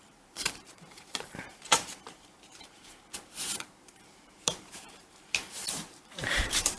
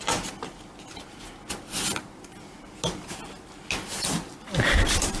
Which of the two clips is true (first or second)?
second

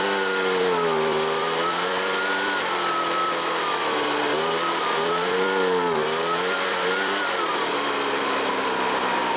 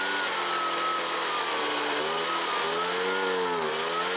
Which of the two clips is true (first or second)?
second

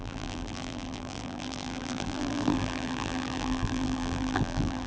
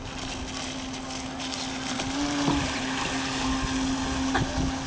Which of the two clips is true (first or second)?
second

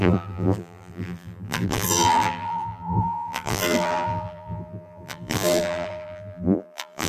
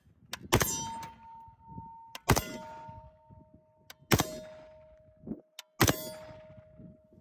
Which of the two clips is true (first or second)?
second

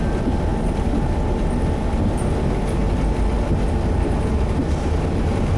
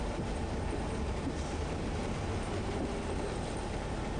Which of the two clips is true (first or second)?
first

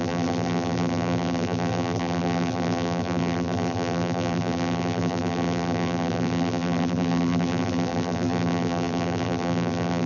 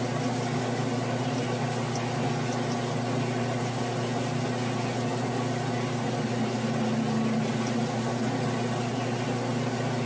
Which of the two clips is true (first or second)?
second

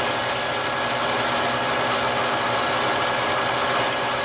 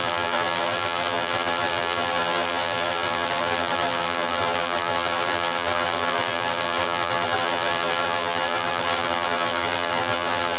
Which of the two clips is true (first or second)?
first